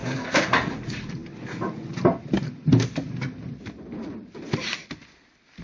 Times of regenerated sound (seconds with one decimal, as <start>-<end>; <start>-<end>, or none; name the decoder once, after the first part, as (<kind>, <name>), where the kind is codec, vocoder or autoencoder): 0.0-0.7 (codec, SNAC)